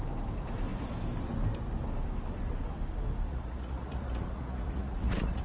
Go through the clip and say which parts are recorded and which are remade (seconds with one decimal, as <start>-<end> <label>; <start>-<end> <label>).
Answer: 0.0-3.3 recorded; 3.3-5.4 remade